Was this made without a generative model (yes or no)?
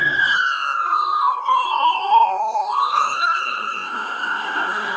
no